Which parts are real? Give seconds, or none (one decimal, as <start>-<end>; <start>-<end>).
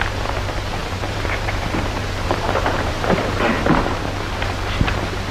0.0-0.8; 4.0-5.3